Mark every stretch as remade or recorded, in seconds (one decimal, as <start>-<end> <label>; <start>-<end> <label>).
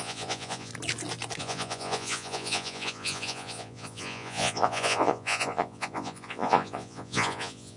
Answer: 0.0-0.7 remade; 0.7-1.4 recorded; 1.4-7.8 remade